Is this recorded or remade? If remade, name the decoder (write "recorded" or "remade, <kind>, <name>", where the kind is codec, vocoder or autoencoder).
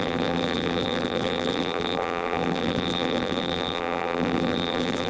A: remade, vocoder, BigVGAN v2